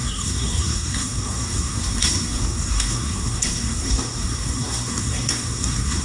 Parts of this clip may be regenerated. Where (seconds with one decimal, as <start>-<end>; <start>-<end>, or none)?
0.0-6.0